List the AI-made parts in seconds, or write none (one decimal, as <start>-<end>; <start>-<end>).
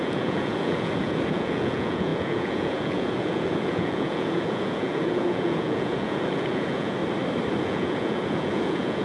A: 0.0-7.0; 7.6-9.0